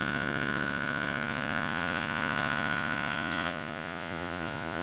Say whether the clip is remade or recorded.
remade